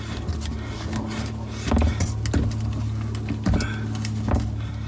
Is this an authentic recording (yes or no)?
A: yes